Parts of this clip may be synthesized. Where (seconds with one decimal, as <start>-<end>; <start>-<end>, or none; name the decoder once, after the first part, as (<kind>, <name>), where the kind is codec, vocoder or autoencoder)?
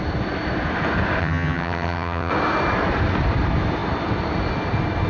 1.2-2.3 (vocoder, HiFi-GAN)